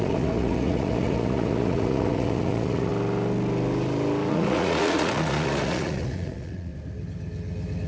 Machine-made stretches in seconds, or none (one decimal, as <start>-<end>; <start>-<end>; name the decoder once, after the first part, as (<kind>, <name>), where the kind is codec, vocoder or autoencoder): 0.0-2.9 (vocoder, Vocos); 4.3-6.7